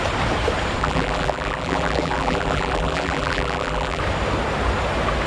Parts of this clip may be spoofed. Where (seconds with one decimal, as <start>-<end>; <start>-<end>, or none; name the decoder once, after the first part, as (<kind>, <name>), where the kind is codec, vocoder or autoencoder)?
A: 0.8-4.0 (vocoder, BigVGAN v2)